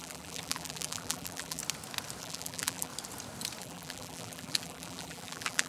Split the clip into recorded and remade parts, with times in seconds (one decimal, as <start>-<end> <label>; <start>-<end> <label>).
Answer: 0.0-1.6 remade; 1.6-2.2 recorded; 2.2-2.9 remade; 2.9-3.6 recorded; 3.6-5.7 remade